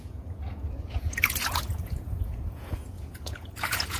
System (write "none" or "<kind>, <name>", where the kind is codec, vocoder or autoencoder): vocoder, Vocos